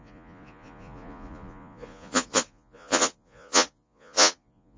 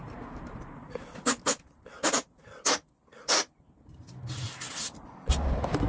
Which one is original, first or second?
second